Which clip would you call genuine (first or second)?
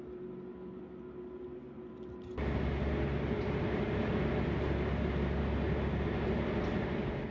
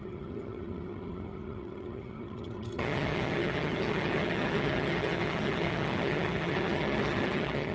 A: first